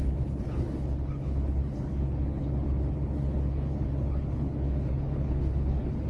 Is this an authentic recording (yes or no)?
no